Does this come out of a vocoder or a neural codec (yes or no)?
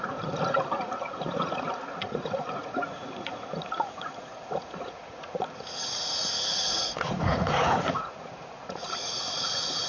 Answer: yes